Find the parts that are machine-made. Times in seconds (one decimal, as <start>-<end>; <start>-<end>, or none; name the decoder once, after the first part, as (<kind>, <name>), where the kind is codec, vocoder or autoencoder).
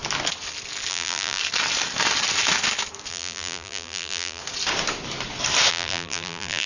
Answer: 0.9-1.4 (vocoder, BigVGAN v2); 3.1-4.4; 5.7-6.7